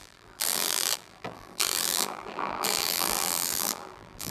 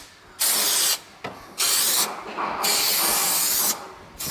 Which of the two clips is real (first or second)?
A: second